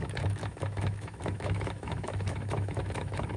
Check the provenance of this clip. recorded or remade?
remade